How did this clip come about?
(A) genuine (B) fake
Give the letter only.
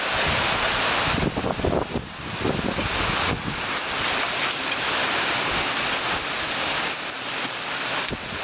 A